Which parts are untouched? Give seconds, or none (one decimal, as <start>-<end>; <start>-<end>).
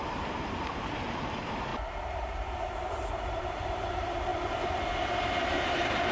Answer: 1.7-3.4; 4.3-5.5